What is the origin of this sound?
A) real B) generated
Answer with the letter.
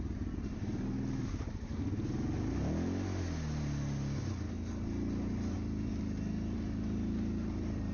A